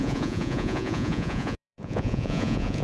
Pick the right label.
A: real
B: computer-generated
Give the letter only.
B